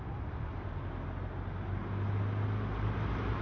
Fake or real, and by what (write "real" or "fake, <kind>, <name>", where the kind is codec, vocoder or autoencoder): real